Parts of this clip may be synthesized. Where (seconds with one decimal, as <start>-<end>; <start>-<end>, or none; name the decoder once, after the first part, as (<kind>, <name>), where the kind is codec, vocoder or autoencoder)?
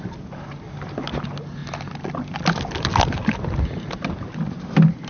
none